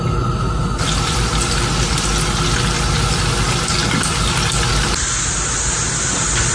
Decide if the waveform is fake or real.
real